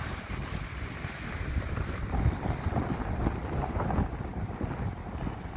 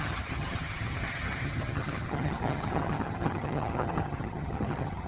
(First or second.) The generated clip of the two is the second